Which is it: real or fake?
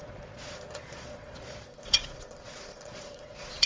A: fake